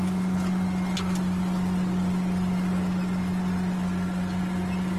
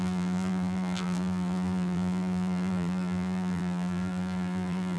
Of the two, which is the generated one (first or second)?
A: second